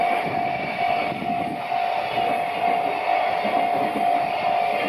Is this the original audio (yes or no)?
yes